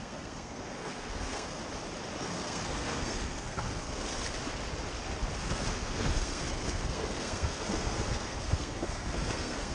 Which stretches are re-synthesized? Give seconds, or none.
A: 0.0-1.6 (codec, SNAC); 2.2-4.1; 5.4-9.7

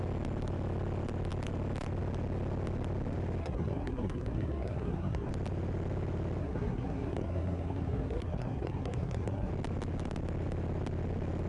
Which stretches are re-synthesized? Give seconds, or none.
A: 3.4-5.3 (codec, SNAC); 6.4-9.5

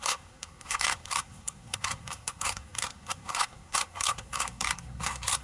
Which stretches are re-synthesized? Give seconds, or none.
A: 0.0-5.4 (codec, SNAC)

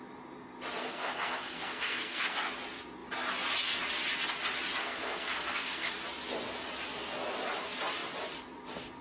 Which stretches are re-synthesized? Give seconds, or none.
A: 0.8-2.5 (codec, SNAC); 4.8-5.9

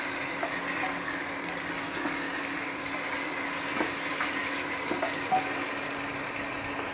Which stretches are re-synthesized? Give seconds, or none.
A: none

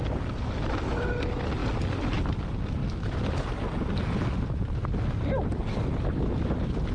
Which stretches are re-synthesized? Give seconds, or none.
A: none